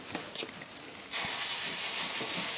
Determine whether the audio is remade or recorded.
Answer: recorded